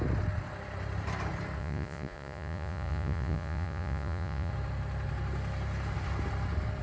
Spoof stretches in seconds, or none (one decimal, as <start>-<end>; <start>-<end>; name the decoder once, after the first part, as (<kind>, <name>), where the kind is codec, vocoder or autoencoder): 1.6-4.5 (vocoder, Vocos)